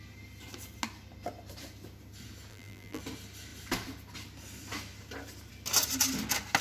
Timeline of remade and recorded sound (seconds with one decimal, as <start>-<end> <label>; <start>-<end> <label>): 0.0-2.5 recorded; 2.5-3.0 remade; 3.0-6.6 recorded